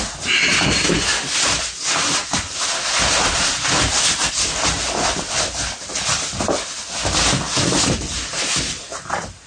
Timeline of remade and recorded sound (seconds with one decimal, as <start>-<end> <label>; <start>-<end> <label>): 0.0-9.5 recorded